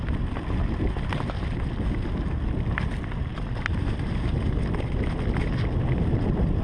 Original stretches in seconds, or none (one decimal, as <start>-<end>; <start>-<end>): 0.0-6.6